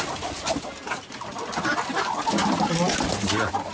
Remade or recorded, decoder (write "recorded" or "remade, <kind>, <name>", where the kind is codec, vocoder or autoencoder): recorded